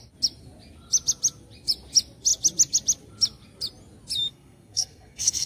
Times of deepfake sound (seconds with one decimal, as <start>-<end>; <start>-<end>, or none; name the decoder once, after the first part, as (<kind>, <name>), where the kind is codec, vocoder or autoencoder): 4.3-5.5 (codec, SNAC)

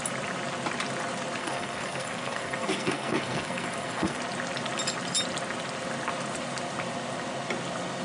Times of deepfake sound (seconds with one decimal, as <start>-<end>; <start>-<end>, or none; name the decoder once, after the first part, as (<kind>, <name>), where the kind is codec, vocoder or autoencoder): 1.4-4.2 (codec, SNAC)

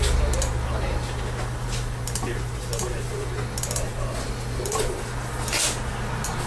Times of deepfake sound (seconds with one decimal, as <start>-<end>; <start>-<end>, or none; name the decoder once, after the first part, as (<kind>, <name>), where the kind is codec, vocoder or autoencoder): none

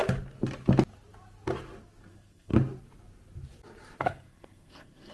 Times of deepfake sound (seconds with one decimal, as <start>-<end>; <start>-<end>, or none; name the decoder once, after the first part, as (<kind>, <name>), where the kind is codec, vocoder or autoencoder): 2.1-2.5 (codec, SNAC); 4.0-5.1

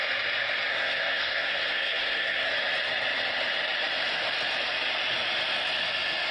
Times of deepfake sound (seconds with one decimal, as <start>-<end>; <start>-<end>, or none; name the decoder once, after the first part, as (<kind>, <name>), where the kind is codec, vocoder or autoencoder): 0.7-2.5 (codec, SNAC)

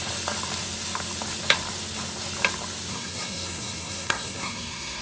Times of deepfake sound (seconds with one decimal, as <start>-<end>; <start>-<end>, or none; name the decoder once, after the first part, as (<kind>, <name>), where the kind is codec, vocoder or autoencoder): 2.9-5.0 (codec, SNAC)

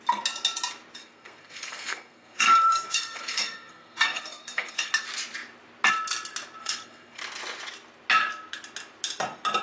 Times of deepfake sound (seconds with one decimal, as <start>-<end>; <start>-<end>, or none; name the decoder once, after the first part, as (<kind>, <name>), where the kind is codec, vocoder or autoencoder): 1.0-4.9 (codec, SNAC); 6.6-7.2

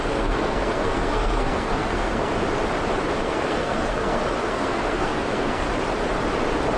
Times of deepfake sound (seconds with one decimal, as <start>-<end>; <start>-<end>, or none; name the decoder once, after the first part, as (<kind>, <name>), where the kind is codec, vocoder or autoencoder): 0.0-2.3 (codec, SNAC); 3.2-5.7